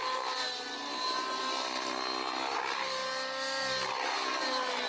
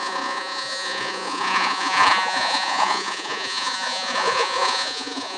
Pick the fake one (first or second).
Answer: second